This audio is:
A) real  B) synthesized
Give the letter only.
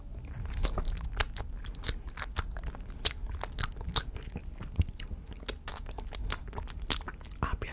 A